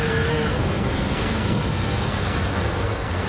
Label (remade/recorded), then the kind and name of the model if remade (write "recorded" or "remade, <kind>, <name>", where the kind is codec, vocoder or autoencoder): remade, codec, SNAC